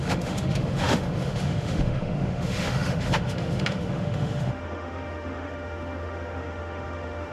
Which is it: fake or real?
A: fake